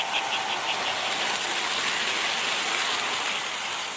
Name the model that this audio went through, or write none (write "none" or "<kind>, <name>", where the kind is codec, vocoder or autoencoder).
none